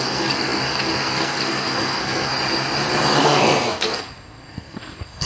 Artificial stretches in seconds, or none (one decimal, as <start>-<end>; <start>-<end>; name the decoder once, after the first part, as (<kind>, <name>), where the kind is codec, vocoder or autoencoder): 0.0-2.3 (codec, SNAC); 3.2-5.3